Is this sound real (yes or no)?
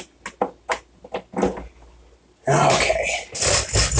yes